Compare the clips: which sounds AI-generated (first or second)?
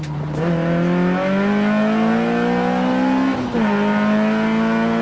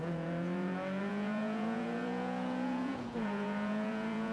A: second